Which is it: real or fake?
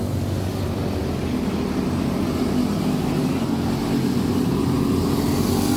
real